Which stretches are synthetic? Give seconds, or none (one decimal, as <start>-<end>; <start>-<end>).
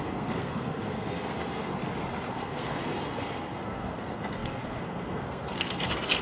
0.0-1.8; 2.3-6.2